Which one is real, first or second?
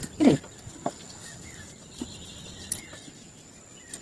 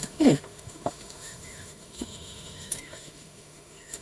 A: first